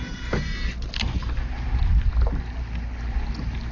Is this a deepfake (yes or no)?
no